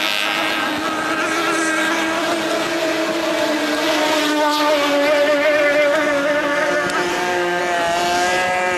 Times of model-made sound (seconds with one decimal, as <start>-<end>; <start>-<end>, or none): 7.1-7.6